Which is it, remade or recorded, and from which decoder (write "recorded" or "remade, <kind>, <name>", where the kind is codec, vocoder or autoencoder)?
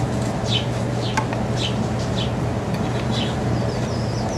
recorded